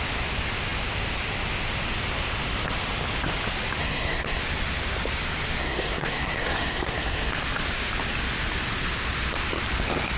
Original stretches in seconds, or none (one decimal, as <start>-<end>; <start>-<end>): 0.0-3.8; 4.4-5.6; 7.3-10.2